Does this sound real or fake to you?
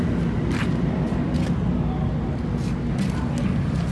real